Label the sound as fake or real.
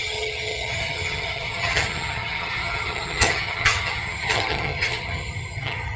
fake